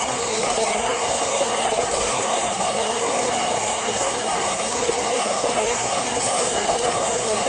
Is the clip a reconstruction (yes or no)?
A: yes